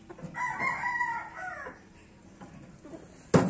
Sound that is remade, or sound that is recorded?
recorded